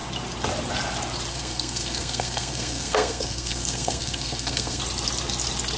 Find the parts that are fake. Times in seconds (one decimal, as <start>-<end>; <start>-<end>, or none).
1.3-4.8